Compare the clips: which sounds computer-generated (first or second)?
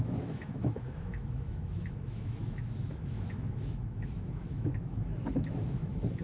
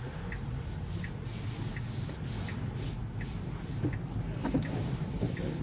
first